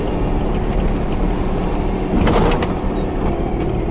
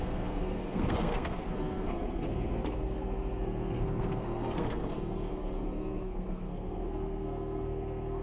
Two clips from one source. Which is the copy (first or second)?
second